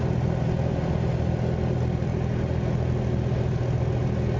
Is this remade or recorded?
recorded